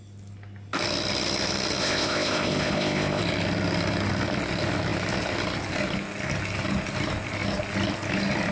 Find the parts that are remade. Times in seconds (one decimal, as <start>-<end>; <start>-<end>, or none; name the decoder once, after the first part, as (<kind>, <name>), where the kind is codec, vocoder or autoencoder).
1.8-3.2 (codec, ZipCodec)